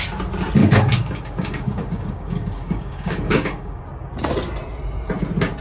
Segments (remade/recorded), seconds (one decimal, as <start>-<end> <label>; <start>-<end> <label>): 0.0-0.6 recorded; 0.6-3.8 remade; 3.8-5.6 recorded